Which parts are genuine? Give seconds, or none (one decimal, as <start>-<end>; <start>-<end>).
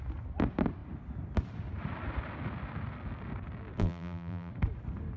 0.0-3.8; 4.5-5.2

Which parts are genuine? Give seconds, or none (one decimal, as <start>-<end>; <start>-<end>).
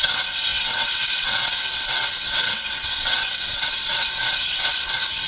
none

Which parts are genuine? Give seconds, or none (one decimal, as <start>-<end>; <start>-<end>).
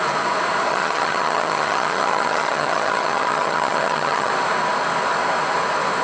0.0-0.7; 4.3-6.0